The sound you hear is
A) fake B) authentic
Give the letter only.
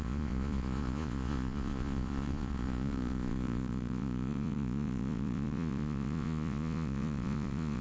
A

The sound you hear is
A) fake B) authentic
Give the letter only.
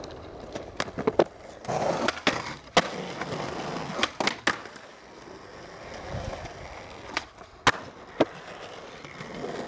B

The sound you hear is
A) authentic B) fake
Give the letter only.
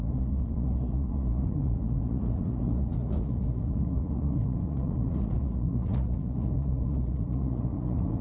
B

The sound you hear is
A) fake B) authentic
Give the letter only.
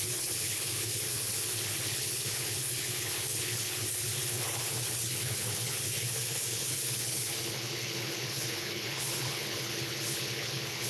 A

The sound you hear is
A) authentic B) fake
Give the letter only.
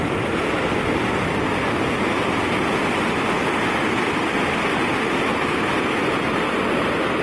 A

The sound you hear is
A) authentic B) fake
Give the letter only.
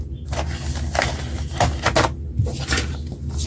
A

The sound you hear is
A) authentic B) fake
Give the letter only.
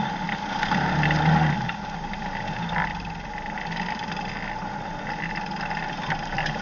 A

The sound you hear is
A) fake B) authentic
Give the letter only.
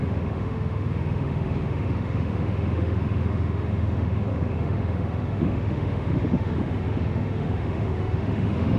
A